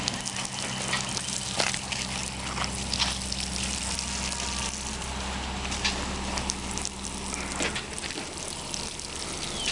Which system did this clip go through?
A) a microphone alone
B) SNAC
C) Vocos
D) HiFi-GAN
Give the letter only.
A